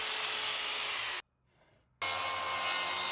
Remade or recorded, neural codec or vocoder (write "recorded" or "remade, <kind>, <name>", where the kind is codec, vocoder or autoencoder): recorded